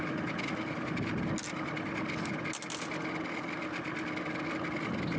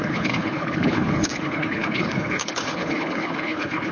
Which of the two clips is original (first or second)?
first